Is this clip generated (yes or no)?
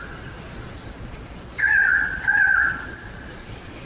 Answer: yes